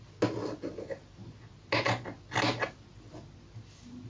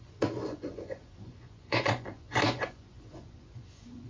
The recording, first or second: first